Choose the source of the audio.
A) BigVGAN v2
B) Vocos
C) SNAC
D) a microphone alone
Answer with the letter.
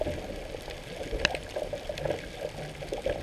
D